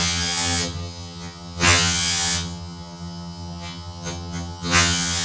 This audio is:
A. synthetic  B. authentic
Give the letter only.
A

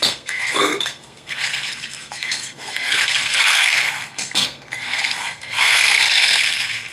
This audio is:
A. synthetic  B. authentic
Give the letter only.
A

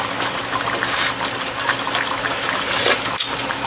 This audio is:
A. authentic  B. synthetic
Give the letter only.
A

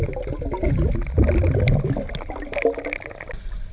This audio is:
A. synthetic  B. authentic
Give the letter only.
B